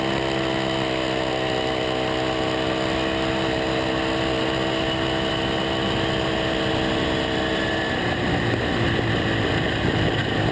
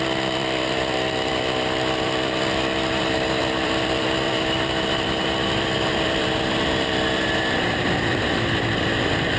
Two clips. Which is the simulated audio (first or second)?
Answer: second